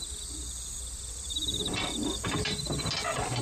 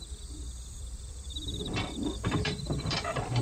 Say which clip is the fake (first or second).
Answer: second